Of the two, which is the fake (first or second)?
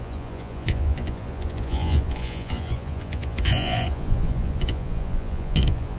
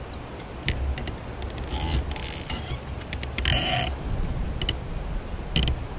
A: first